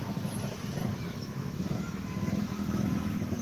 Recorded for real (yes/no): no